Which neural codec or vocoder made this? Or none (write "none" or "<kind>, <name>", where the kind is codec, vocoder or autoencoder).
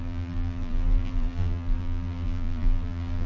vocoder, BigVGAN v2